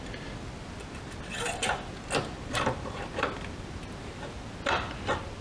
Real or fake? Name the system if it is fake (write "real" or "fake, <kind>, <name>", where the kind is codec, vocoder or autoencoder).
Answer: real